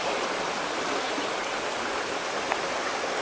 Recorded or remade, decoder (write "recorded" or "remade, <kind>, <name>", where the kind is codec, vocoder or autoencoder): recorded